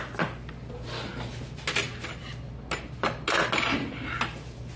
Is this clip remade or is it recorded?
recorded